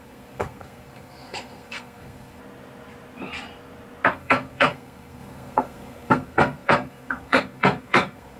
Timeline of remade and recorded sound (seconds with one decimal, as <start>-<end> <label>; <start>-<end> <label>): 0.0-2.4 remade; 2.4-4.1 recorded; 4.1-8.4 remade